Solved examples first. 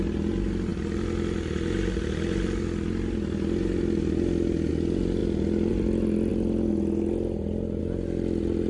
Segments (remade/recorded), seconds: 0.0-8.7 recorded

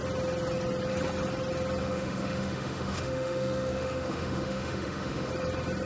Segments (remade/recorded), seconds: 0.0-1.8 recorded; 1.8-5.3 remade; 5.3-5.9 recorded

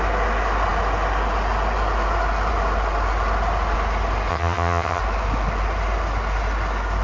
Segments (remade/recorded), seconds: 0.0-4.3 recorded; 4.3-5.0 remade; 5.0-7.0 recorded